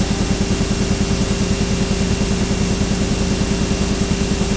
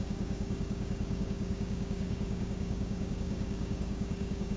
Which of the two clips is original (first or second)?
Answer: first